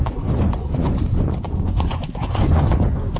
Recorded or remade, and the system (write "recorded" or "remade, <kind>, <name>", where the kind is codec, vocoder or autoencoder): remade, vocoder, Vocos